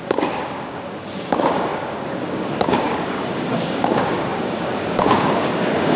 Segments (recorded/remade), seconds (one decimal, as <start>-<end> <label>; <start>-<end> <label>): 0.0-6.0 remade